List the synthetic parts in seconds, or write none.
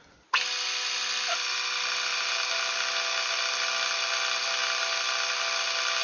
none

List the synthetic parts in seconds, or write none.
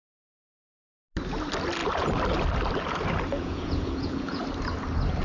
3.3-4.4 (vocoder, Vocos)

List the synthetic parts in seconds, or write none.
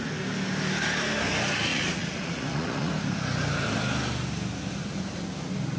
1.7-2.9 (vocoder, Vocos)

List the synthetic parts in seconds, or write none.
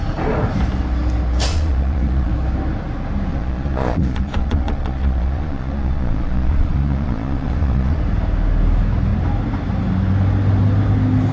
1.5-2.3 (vocoder, Vocos); 3.3-8.0